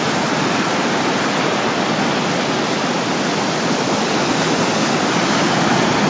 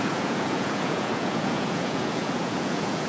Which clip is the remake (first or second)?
second